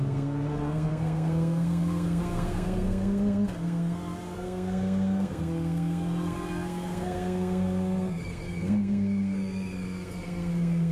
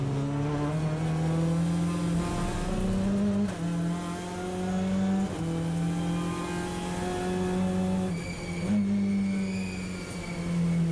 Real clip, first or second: second